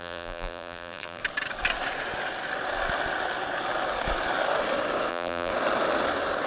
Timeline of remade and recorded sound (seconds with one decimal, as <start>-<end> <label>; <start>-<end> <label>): 0.0-1.2 remade; 1.2-5.1 recorded; 5.1-5.5 remade; 5.5-6.5 recorded